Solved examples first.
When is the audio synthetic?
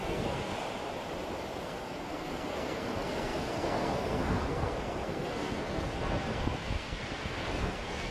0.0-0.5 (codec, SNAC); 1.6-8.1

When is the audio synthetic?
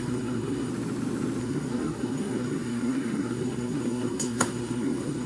0.0-0.7 (codec, SNAC); 1.4-5.3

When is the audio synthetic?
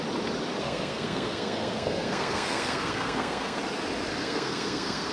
0.5-3.6 (codec, SNAC); 4.1-5.1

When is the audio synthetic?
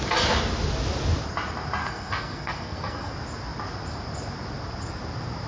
1.8-3.1 (codec, SNAC)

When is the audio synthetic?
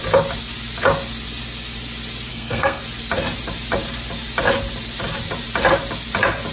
2.3-2.8 (codec, SNAC)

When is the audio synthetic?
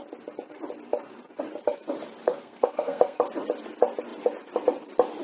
2.2-3.2 (codec, SNAC)